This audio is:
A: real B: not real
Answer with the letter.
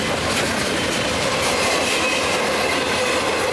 A